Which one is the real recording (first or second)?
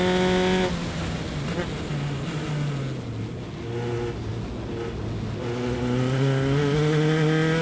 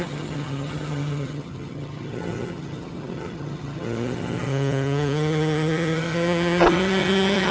first